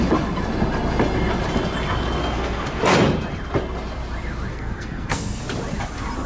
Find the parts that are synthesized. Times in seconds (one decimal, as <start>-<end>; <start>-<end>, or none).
2.2-2.8; 4.5-5.4